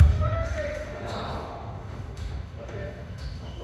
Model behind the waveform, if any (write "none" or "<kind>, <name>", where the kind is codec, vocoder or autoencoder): autoencoder, DAC-VAE